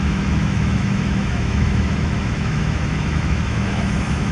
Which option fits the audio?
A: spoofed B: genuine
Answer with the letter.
A